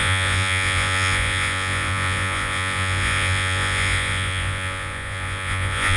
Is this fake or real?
fake